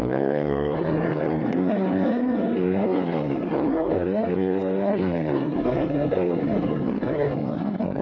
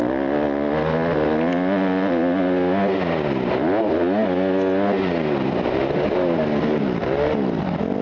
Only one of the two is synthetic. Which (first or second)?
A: first